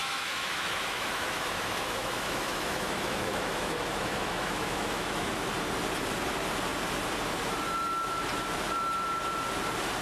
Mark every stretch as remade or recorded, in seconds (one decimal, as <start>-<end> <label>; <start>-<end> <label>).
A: 0.0-5.3 remade; 5.3-10.0 recorded